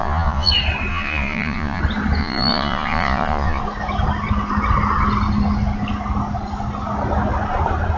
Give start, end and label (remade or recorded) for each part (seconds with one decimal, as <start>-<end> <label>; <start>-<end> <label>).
0.0-0.5 remade; 0.5-0.9 recorded; 0.9-1.8 remade; 1.8-2.2 recorded; 2.2-3.6 remade; 3.6-8.0 recorded